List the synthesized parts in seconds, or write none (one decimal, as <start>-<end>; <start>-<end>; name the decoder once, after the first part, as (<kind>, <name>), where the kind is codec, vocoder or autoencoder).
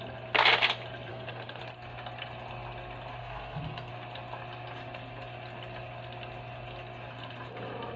1.1-1.6 (codec, SNAC); 3.2-3.9